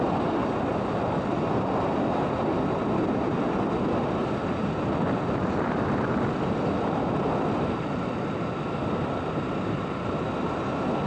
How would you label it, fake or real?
real